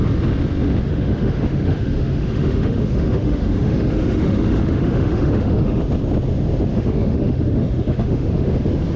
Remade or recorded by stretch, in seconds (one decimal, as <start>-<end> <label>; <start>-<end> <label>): 0.0-0.9 recorded; 0.9-5.8 remade; 5.8-6.7 recorded; 6.7-8.5 remade; 8.5-9.0 recorded